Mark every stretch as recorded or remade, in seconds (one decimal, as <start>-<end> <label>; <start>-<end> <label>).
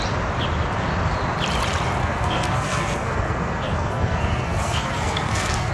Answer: 0.0-2.0 recorded; 2.0-5.7 remade